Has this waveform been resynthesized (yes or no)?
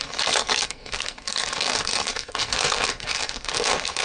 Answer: yes